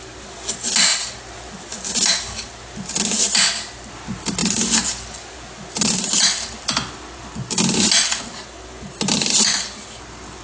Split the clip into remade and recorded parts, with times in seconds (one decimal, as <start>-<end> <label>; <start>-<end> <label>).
0.0-10.4 recorded